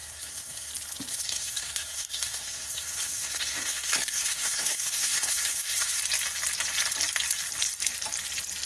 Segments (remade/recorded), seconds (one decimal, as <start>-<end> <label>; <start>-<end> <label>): 0.0-0.7 remade; 0.7-1.1 recorded; 1.1-6.0 remade; 6.0-8.7 recorded